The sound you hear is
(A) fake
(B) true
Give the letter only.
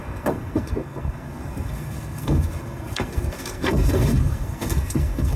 A